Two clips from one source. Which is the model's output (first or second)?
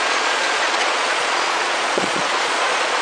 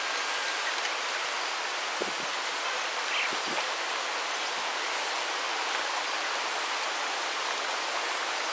first